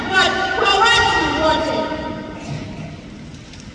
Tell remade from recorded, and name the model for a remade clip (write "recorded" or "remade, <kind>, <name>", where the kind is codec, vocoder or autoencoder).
recorded